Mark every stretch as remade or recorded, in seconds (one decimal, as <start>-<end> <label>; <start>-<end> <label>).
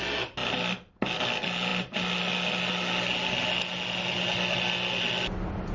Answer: 0.0-5.7 recorded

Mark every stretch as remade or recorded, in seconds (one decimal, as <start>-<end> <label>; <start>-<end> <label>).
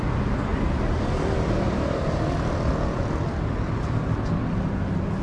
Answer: 0.0-0.5 recorded; 0.5-3.0 remade; 3.0-5.2 recorded